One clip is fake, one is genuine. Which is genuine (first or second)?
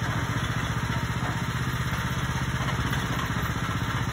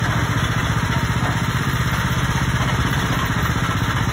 first